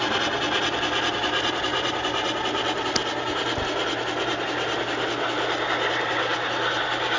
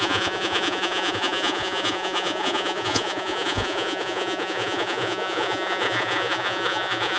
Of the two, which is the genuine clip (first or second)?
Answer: first